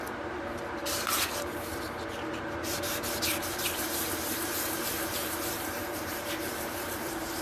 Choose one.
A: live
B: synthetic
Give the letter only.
B